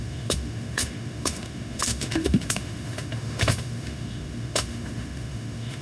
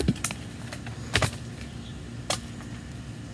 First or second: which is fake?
first